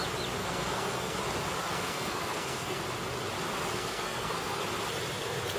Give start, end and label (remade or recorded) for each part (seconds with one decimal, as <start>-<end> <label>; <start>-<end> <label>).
0.0-0.4 recorded; 0.4-1.2 remade; 1.2-1.7 recorded; 1.7-2.8 remade; 2.8-3.7 recorded; 3.7-4.6 remade; 4.6-5.6 recorded